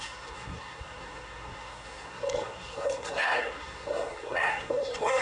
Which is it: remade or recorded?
remade